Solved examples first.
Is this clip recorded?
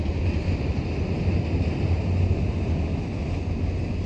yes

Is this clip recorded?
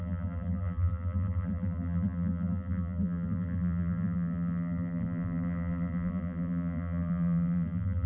no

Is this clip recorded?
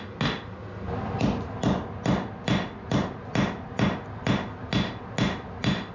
yes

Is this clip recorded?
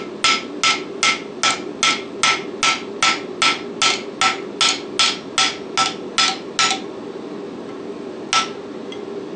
yes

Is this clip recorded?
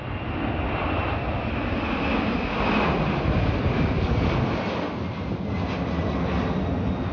yes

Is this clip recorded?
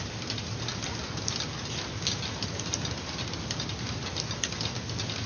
yes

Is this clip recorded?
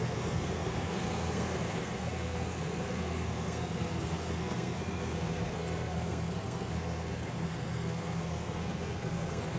no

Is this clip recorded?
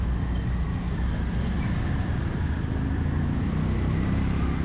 yes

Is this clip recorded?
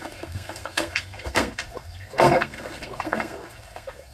no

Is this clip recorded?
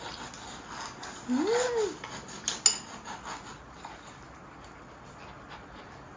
yes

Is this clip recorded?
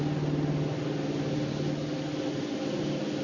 yes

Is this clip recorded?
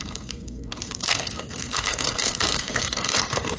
no